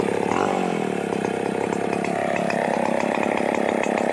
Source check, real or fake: real